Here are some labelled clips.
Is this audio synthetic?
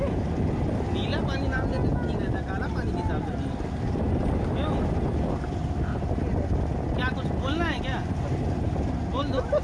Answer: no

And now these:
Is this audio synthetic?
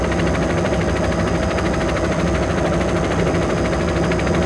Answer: no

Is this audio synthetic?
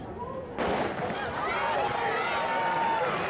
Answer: no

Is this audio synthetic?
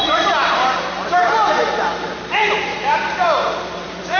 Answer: yes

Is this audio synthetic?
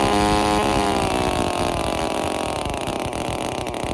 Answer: no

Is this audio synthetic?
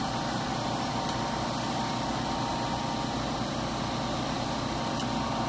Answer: yes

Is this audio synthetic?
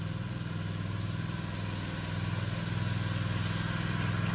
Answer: no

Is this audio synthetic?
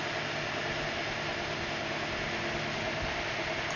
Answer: no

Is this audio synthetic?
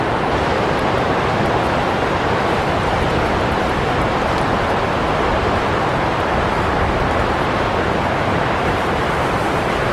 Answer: yes